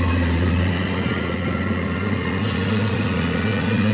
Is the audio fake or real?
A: fake